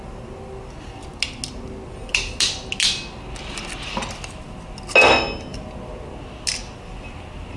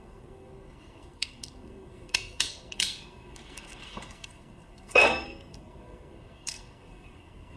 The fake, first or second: second